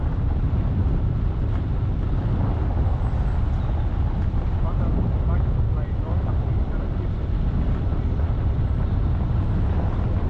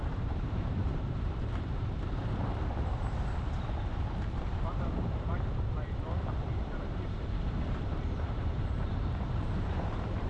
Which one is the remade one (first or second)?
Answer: second